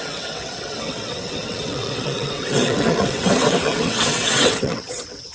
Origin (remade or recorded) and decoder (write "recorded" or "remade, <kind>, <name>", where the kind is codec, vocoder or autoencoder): remade, vocoder, WaveNeXt